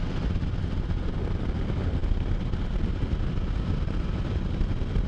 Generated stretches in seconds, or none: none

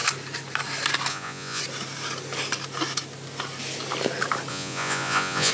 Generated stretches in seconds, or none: 1.1-1.6 (vocoder, Vocos); 4.5-5.5

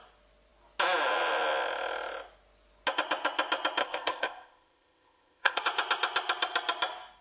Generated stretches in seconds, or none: 3.8-5.6 (codec, ZipCodec)

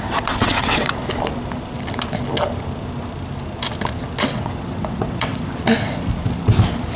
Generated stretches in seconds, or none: 0.0-1.0 (vocoder, WaveNeXt); 4.3-5.5

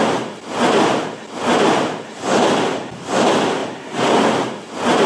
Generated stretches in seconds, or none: none

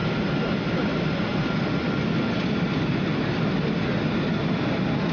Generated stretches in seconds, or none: none